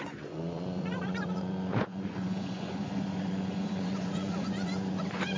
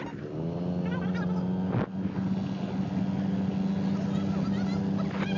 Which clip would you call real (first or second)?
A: second